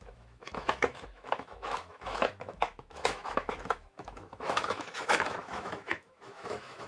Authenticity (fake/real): fake